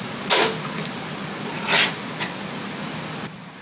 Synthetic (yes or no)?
no